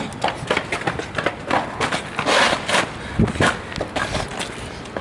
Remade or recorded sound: recorded